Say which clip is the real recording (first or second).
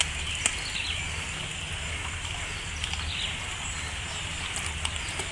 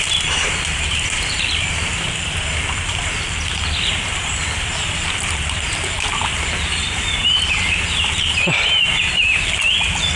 first